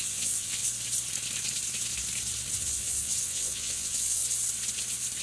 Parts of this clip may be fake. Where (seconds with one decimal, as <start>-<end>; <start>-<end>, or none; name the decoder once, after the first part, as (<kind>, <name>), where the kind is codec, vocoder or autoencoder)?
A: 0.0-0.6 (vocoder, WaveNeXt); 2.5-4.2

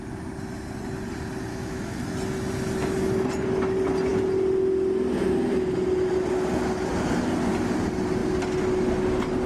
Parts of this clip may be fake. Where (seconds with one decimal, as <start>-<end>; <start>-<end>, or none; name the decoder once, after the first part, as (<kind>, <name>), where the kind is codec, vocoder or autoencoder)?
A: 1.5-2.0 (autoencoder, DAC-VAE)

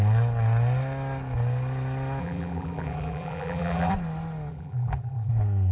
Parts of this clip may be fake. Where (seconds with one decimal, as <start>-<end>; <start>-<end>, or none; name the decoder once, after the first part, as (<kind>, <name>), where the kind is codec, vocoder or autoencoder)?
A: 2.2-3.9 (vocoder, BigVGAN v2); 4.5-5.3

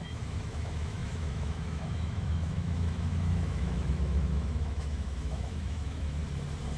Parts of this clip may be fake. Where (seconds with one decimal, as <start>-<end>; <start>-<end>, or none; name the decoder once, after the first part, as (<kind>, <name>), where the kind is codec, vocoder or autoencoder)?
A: 0.0-6.2 (autoencoder, DAC-VAE)

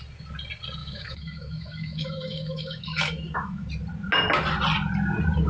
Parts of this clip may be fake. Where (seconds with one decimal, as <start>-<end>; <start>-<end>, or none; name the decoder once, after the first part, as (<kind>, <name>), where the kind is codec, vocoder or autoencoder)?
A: 0.8-3.7 (autoencoder, DAC-VAE)

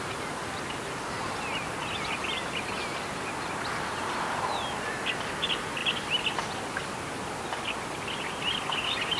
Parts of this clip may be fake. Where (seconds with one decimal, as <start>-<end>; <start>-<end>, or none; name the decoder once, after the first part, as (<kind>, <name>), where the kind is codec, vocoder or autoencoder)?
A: none

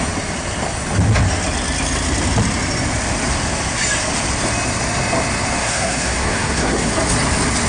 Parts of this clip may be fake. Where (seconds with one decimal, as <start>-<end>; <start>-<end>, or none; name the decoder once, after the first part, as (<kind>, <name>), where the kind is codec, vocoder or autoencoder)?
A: 5.6-6.9 (codec, SNAC)